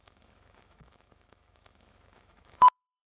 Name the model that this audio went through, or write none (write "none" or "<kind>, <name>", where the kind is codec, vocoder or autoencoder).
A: autoencoder, DAC-VAE